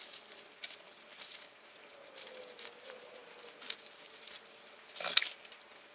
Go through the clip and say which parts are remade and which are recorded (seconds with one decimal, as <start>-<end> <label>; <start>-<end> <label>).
0.0-5.9 recorded